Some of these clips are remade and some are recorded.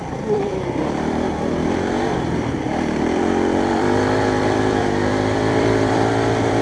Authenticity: remade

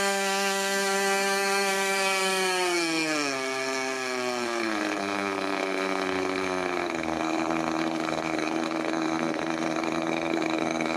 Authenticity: remade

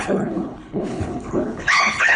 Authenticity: remade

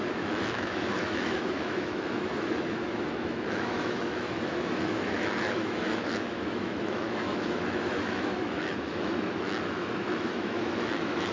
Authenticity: remade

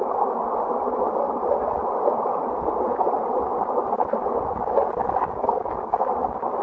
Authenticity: recorded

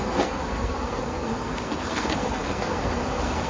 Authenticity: remade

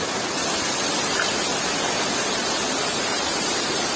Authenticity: recorded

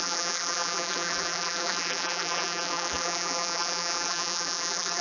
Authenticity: remade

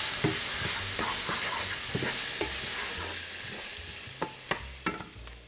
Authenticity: recorded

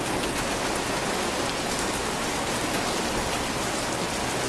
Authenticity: recorded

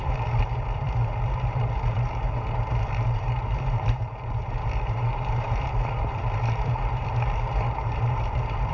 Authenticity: remade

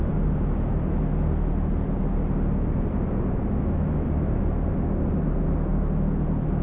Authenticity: recorded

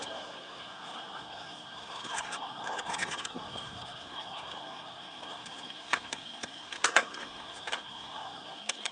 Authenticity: remade